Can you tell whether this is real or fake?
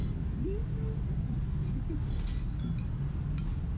real